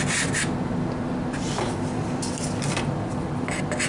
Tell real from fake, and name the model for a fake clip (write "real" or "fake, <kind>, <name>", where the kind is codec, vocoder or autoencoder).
real